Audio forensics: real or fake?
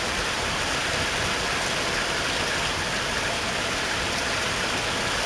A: real